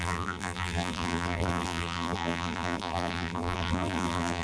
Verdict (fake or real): fake